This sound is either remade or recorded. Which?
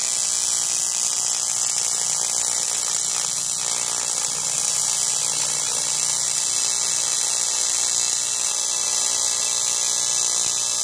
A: recorded